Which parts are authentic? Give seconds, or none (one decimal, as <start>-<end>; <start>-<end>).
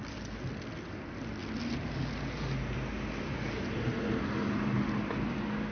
0.0-5.7